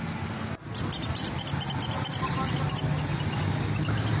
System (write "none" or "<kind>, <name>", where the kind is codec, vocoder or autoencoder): none